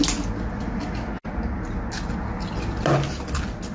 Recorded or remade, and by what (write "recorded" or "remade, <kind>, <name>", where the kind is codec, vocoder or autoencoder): recorded